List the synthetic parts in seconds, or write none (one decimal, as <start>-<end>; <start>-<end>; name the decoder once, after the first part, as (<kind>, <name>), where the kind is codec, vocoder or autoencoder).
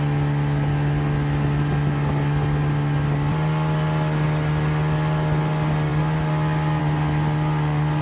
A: none